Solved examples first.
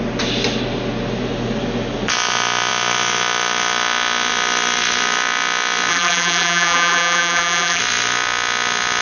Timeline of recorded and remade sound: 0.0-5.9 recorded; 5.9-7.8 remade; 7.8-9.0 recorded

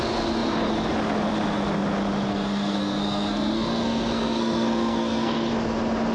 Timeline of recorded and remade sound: 0.0-2.3 recorded; 2.3-5.5 remade; 5.5-6.1 recorded

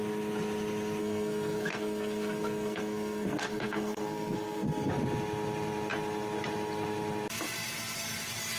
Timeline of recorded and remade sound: 0.0-1.0 recorded; 1.0-4.9 remade; 4.9-8.6 recorded

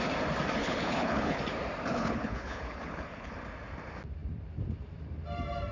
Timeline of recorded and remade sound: 0.0-0.6 recorded; 0.6-1.4 remade; 1.4-1.9 recorded; 1.9-3.3 remade; 3.3-5.7 recorded

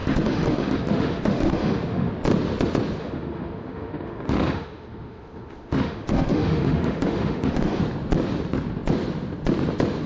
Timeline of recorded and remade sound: 0.0-2.1 remade; 2.1-3.0 recorded; 3.0-7.8 remade; 7.8-10.1 recorded